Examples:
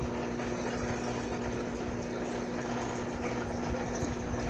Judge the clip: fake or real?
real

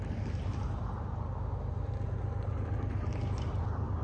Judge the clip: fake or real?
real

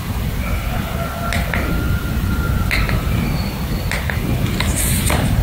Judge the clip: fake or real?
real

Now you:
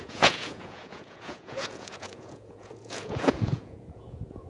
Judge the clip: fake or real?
fake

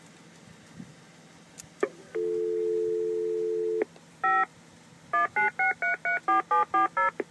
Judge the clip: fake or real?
real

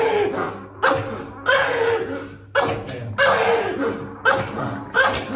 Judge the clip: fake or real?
real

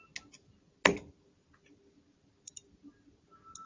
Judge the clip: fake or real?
real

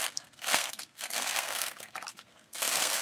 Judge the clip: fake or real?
fake